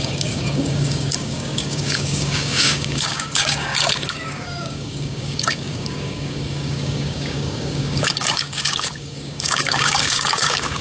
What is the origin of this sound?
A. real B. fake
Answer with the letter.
B